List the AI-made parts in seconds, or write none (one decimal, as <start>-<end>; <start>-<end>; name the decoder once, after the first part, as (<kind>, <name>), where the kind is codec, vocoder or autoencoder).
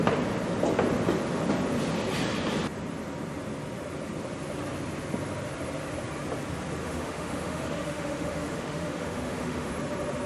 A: 6.8-9.7 (autoencoder, DAC-VAE)